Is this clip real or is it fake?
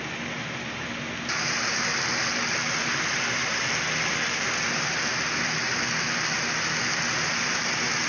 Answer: real